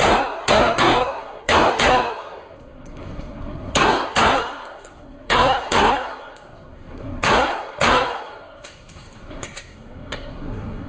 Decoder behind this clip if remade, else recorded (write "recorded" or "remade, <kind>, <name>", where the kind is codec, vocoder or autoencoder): remade, codec, SNAC